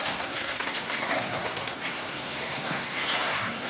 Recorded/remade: remade